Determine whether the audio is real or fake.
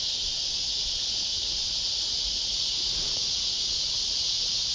fake